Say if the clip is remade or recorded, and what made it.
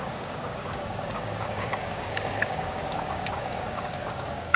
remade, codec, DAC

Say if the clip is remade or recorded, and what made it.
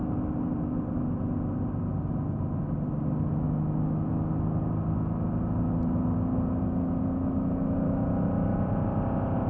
recorded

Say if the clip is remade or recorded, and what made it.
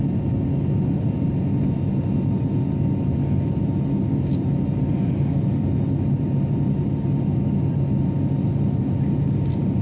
recorded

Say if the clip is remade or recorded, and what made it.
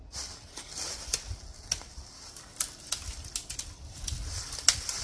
recorded